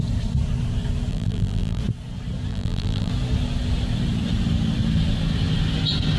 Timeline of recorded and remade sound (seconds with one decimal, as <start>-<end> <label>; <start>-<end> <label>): 0.0-1.1 recorded; 1.1-1.8 remade; 1.8-2.5 recorded; 2.5-3.1 remade; 3.1-6.2 recorded